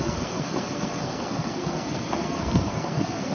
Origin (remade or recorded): remade